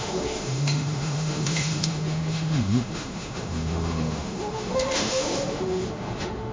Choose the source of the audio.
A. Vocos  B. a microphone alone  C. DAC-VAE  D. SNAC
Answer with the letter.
C